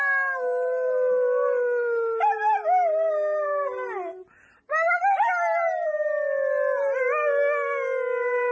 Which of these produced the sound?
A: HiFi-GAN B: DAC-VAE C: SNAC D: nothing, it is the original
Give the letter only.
D